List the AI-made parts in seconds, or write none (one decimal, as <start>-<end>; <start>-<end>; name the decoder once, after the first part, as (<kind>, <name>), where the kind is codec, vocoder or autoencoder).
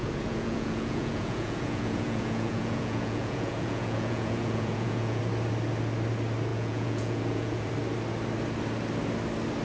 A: 0.0-5.2 (vocoder, Vocos); 6.5-7.7